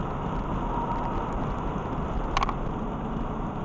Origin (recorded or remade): recorded